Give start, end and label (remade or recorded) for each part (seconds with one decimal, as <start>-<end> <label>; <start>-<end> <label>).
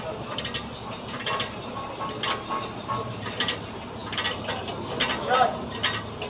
0.0-6.3 recorded